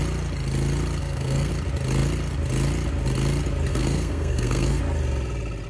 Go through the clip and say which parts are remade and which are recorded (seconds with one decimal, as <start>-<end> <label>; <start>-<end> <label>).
0.0-1.0 recorded; 1.0-1.5 remade; 1.5-3.7 recorded; 3.7-4.8 remade; 4.8-5.7 recorded

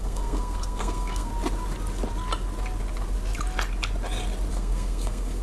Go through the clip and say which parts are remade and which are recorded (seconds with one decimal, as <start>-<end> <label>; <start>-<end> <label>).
0.0-1.3 remade; 1.3-4.5 recorded; 4.5-5.4 remade

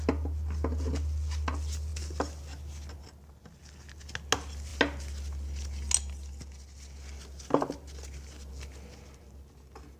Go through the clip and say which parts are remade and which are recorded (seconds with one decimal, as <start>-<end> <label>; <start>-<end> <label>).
0.0-10.0 recorded

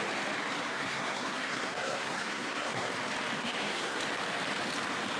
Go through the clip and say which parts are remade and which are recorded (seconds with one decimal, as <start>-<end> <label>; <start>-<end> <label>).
0.0-0.7 recorded; 0.7-2.9 remade; 2.9-3.4 recorded; 3.4-4.0 remade; 4.0-5.2 recorded

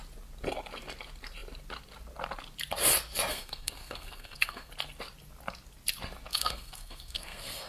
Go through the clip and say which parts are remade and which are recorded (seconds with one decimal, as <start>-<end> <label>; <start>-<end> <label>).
0.0-3.3 recorded; 3.3-4.7 remade; 4.7-6.3 recorded; 6.3-7.7 remade